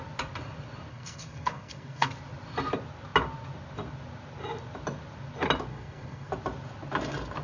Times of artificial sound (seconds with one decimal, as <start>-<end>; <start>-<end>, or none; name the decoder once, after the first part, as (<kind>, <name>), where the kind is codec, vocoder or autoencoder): 0.9-2.1 (codec, SNAC); 5.7-6.3